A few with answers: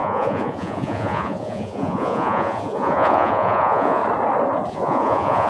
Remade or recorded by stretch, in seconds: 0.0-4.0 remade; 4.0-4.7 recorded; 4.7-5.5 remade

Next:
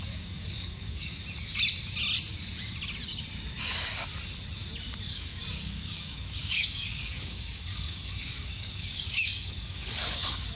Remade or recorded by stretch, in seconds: 0.0-1.2 remade; 1.2-3.6 recorded; 3.6-4.1 remade; 4.1-5.0 recorded; 5.0-10.6 remade

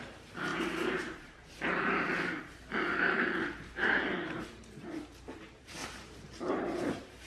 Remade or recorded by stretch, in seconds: 0.0-7.3 remade

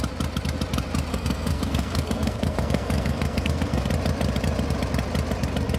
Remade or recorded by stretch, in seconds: 0.0-1.1 recorded; 1.1-3.9 remade; 3.9-5.8 recorded

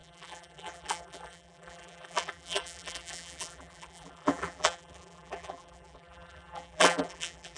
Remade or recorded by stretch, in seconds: 0.0-7.6 remade